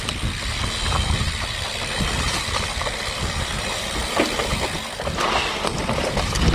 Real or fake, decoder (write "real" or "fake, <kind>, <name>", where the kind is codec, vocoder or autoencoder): real